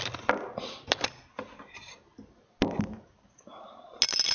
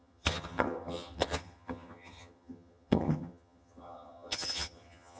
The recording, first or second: first